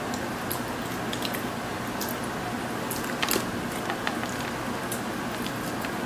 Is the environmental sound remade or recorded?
recorded